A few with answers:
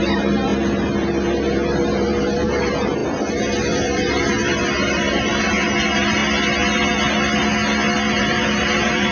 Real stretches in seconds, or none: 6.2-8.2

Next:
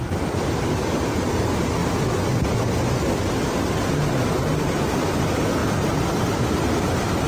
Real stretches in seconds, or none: 1.8-4.6; 5.6-6.1

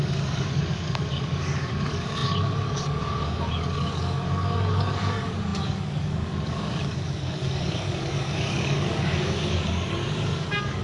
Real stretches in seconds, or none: none